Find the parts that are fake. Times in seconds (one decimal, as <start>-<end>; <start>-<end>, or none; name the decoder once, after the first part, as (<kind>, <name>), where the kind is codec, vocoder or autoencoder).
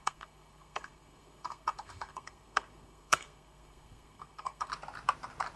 0.0-4.7 (codec, SNAC)